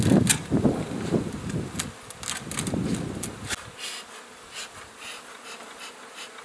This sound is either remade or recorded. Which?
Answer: recorded